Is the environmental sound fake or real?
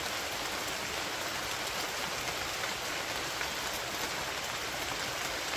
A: real